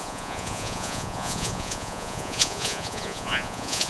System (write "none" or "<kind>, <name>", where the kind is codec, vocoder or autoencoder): vocoder, Vocos